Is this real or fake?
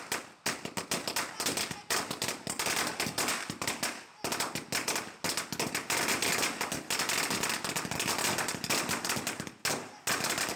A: real